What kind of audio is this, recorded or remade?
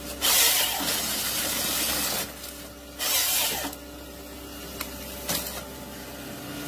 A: recorded